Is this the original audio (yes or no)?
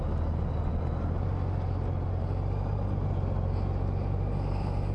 yes